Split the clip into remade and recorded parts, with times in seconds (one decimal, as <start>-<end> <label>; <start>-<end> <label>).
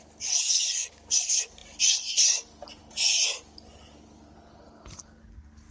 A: 0.0-5.7 recorded